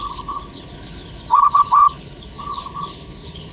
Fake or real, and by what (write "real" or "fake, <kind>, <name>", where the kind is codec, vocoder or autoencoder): fake, codec, HILCodec